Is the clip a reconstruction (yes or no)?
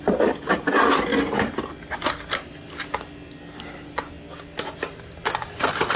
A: no